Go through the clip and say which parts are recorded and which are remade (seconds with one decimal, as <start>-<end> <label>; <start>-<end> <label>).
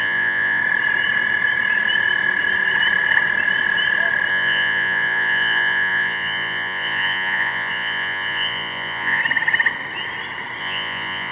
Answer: 0.0-0.6 remade; 0.6-4.3 recorded; 4.3-9.2 remade; 9.2-10.6 recorded; 10.6-11.3 remade